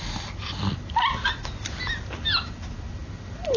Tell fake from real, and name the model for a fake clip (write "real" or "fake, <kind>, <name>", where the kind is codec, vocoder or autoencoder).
real